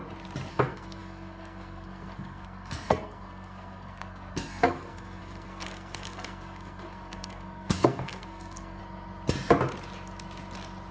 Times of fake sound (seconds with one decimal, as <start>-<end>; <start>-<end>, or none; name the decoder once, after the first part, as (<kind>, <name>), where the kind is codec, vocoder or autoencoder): 0.5-8.8 (codec, SNAC)